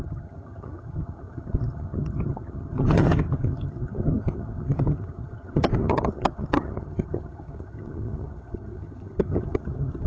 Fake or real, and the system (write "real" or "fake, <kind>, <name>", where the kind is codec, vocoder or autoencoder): fake, vocoder, HiFi-GAN